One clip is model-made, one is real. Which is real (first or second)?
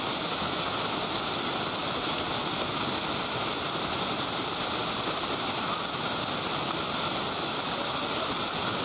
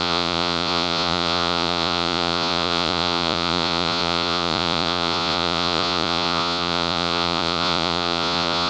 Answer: first